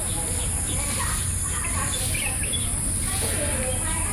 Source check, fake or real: real